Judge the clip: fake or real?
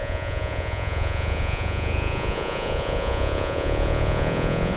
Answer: fake